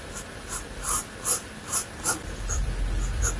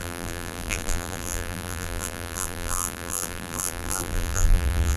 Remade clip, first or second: second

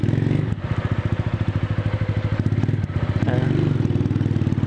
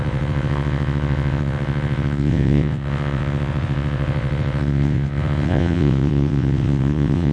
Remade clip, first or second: second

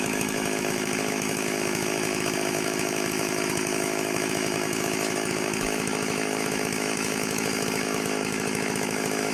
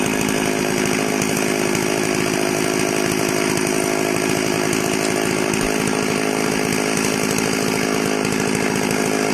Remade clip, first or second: first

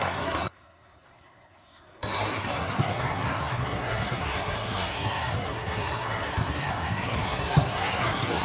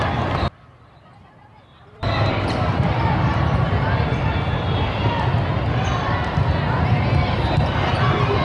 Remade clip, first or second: first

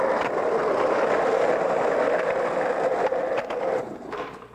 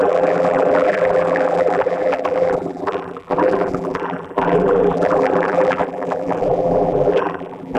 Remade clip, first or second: second